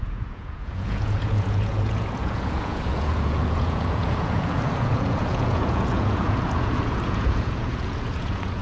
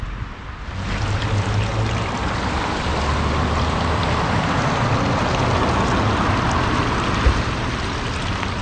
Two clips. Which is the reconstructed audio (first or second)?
first